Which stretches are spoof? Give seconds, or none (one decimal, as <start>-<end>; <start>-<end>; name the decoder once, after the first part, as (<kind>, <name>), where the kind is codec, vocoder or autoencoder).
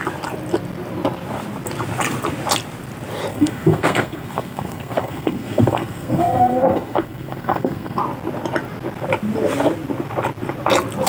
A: 3.3-8.0 (codec, SNAC)